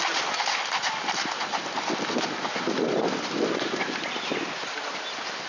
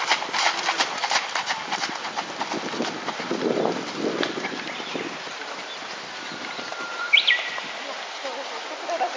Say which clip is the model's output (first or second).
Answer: second